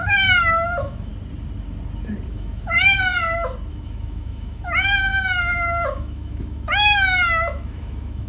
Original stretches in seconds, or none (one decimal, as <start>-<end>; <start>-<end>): 1.1-2.3; 3.1-3.7